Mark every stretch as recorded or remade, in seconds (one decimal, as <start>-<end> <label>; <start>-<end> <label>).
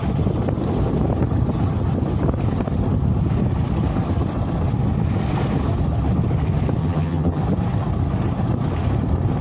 0.0-6.8 recorded; 6.8-7.4 remade; 7.4-9.4 recorded